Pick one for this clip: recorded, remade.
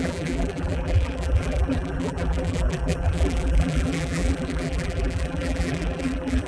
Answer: remade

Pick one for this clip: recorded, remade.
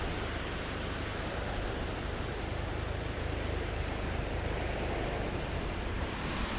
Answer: remade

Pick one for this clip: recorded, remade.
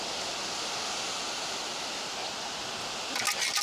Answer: recorded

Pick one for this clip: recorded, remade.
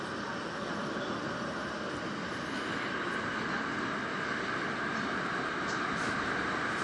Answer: recorded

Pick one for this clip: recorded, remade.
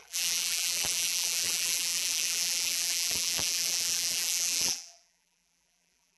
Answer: remade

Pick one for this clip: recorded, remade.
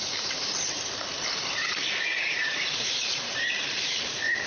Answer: recorded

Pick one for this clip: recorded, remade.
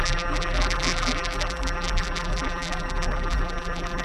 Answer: remade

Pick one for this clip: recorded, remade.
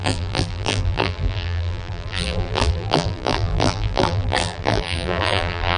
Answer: remade